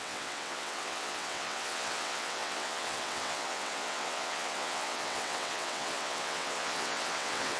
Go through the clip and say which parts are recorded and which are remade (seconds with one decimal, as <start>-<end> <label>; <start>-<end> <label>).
0.0-7.6 remade

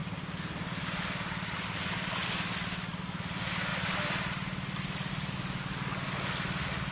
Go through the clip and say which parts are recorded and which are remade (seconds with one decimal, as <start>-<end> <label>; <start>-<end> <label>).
0.0-6.9 recorded

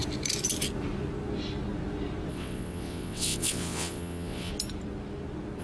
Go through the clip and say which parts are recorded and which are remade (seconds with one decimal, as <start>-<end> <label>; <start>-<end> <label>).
0.0-2.3 recorded; 2.3-4.5 remade; 4.5-5.6 recorded

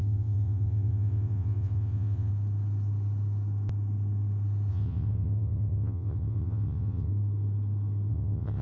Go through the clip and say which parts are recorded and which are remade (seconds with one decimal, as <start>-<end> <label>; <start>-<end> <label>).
0.0-2.3 remade; 2.3-4.7 recorded; 4.7-7.1 remade; 7.1-8.1 recorded; 8.1-8.6 remade